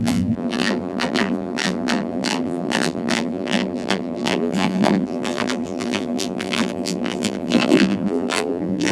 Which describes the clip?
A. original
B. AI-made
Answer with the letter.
B